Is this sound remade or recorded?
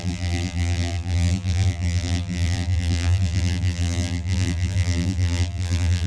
remade